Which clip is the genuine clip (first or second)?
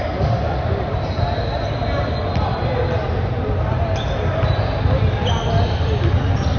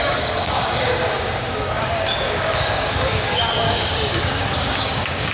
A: first